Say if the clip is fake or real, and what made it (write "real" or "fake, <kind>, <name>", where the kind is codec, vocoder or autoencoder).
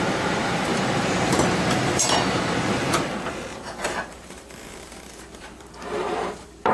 fake, vocoder, BigVGAN v2